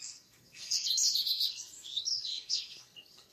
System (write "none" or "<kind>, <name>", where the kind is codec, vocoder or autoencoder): codec, SNAC